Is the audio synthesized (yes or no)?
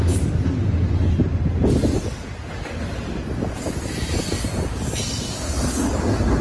no